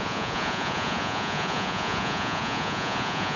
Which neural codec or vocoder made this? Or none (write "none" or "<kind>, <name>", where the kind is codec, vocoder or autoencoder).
vocoder, Vocos